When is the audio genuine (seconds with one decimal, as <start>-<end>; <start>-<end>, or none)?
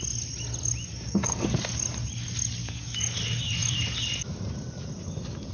0.0-0.9; 1.7-2.6; 3.2-5.5